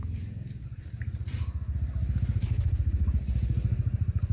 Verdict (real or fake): real